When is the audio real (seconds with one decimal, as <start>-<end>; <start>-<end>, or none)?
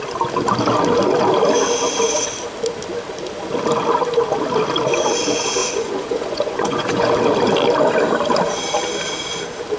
0.0-5.6; 7.1-9.8